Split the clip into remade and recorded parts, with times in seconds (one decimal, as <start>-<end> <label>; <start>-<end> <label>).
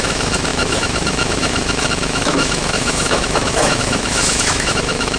0.0-5.2 remade